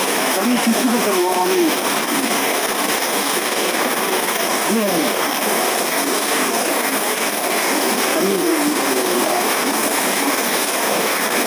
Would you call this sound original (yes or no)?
no